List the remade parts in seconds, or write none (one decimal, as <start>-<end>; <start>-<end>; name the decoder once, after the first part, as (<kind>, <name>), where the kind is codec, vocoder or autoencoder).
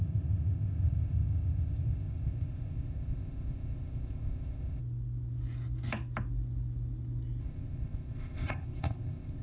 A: 0.0-4.8 (codec, ZipCodec); 7.4-9.4